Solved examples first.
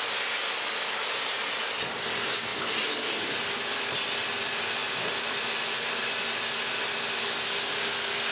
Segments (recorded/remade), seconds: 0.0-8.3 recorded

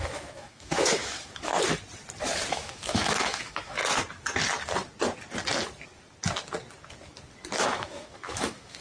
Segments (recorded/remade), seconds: 0.0-1.5 remade; 1.5-2.5 recorded; 2.5-3.8 remade; 3.8-7.6 recorded; 7.6-8.8 remade